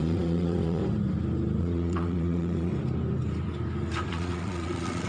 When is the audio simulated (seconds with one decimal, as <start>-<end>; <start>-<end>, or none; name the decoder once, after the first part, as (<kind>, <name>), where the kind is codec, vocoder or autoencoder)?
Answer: 0.0-0.8 (vocoder, Vocos); 1.6-2.7; 4.1-5.1